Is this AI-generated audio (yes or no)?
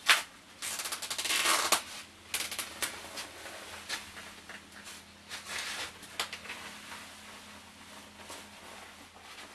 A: no